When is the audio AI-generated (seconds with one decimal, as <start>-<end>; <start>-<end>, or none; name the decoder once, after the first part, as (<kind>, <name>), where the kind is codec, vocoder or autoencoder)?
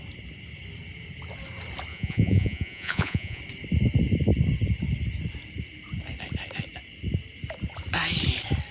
1.9-3.4 (vocoder, Vocos)